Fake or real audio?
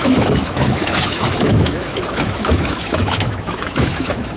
fake